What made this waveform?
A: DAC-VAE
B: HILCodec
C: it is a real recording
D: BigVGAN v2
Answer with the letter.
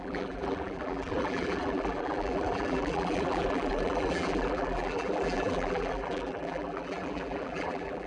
D